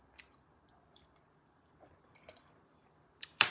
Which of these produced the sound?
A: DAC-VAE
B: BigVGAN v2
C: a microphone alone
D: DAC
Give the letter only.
B